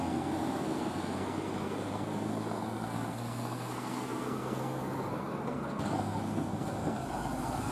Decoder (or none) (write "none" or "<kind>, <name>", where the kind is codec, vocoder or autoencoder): codec, SNAC